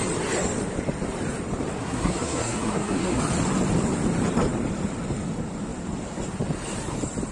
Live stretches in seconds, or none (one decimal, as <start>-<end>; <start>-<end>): 0.0-1.8; 3.2-7.3